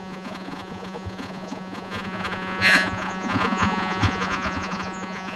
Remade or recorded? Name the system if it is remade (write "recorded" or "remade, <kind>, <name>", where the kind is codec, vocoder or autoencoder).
remade, vocoder, Vocos